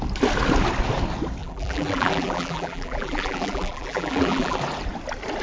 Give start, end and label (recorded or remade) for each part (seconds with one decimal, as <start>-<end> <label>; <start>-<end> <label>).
0.0-1.4 recorded; 1.4-4.6 remade; 4.6-5.4 recorded